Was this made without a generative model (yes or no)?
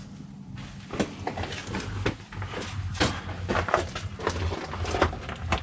yes